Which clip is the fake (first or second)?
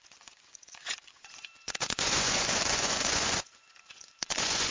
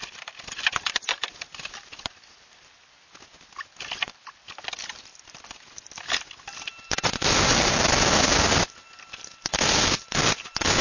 first